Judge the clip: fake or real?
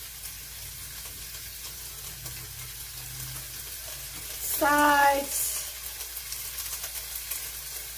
real